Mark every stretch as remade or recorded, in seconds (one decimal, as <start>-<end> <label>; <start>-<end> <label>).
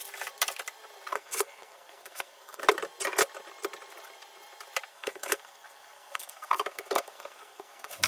0.0-1.1 recorded; 1.1-2.6 remade; 2.6-4.9 recorded; 4.9-8.1 remade